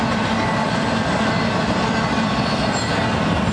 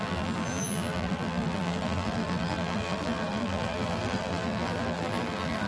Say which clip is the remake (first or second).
second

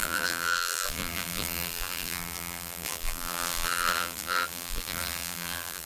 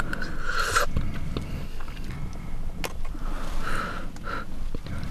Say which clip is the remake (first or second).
first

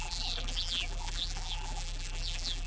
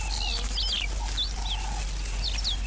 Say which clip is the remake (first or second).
first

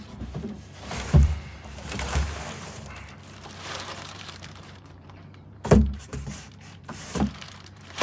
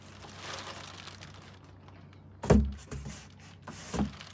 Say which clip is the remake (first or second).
first